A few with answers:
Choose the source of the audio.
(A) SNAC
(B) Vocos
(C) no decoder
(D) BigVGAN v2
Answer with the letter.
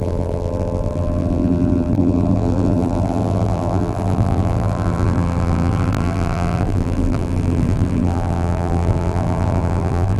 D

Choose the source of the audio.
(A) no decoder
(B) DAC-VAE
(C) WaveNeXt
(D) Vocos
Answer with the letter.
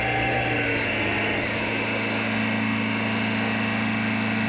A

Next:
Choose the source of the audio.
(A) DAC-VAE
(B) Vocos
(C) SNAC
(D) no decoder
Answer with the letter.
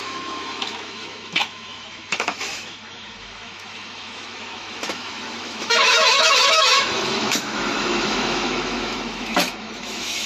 A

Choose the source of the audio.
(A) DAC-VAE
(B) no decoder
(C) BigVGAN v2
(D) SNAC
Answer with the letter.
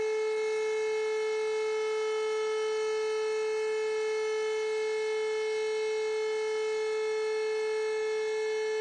B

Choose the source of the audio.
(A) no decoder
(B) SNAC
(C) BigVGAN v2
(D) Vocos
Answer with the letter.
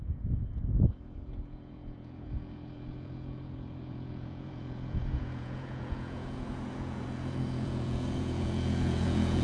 D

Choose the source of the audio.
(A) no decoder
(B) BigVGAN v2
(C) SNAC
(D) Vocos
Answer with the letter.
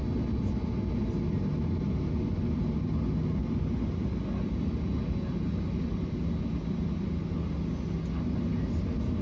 A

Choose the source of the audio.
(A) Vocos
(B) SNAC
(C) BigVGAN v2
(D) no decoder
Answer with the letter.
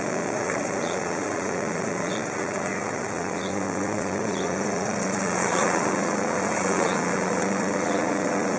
A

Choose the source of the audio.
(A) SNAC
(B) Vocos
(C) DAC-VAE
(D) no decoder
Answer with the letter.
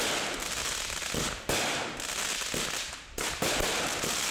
D